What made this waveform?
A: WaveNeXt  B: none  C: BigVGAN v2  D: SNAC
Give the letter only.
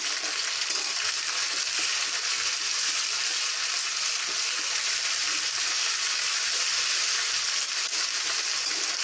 B